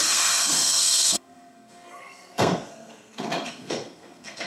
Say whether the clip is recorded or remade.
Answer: remade